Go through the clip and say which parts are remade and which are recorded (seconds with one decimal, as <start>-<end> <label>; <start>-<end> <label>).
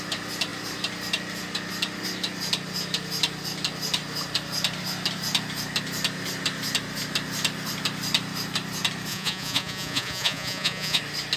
0.0-9.1 recorded; 9.1-11.0 remade; 11.0-11.4 recorded